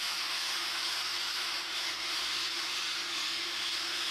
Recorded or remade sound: remade